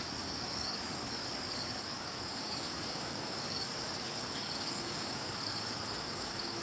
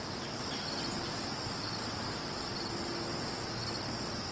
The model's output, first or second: first